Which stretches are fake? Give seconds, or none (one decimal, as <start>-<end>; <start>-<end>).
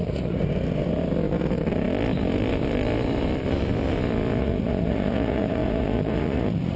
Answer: 0.0-0.4; 4.4-6.8